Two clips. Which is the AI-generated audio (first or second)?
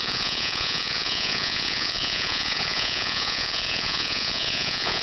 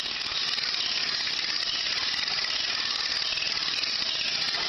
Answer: first